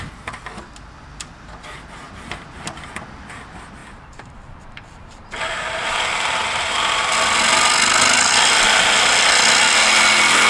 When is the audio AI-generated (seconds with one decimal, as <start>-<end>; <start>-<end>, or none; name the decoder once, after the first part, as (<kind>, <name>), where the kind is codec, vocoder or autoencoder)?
3.8-7.0 (vocoder, BigVGAN v2)